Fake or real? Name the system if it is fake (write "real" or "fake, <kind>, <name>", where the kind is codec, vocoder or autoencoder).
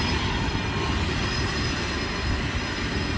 real